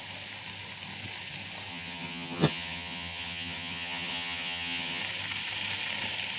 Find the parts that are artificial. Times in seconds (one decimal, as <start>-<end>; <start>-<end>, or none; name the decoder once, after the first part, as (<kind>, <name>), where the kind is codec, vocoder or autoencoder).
1.7-5.0 (vocoder, HiFi-GAN)